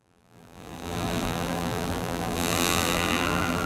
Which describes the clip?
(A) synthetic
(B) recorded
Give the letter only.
A